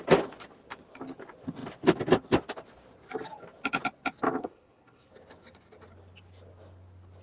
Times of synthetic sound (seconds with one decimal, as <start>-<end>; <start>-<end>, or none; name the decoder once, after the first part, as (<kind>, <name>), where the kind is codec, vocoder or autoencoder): 4.4-5.1 (codec, SNAC)